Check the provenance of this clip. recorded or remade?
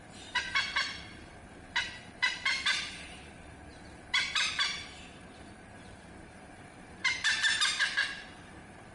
remade